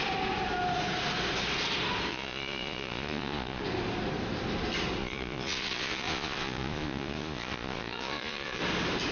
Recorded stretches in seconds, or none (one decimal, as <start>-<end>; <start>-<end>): 0.0-2.1; 3.6-5.0; 8.6-9.1